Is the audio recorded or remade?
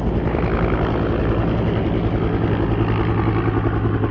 recorded